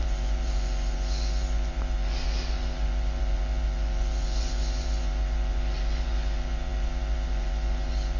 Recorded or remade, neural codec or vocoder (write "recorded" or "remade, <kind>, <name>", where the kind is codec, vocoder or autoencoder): remade, vocoder, Vocos